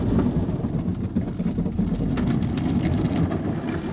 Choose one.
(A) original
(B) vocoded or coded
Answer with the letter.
A